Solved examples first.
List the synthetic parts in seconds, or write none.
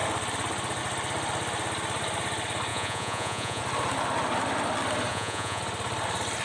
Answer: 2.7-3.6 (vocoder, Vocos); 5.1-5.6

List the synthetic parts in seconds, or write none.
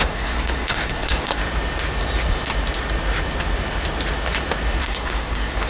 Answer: 0.0-1.4 (codec, SNAC); 4.8-5.7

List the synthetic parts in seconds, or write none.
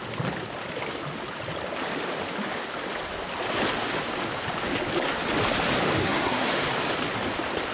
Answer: 6.0-6.5 (codec, SNAC)